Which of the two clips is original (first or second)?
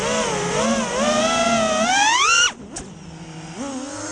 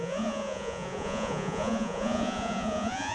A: first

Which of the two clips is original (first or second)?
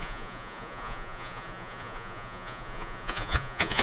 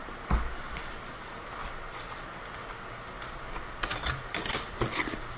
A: second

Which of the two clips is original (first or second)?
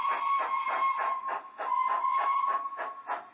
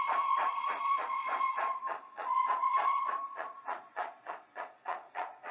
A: first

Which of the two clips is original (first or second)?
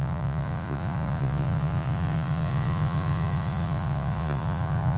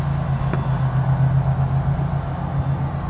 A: second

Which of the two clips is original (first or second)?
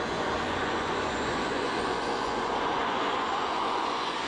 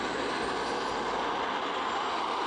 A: second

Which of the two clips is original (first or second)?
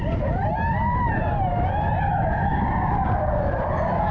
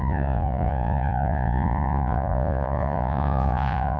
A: first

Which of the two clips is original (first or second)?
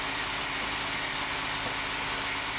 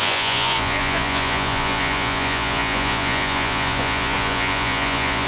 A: first